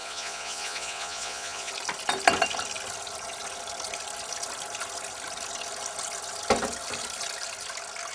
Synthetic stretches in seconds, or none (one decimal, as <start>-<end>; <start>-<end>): 0.0-1.7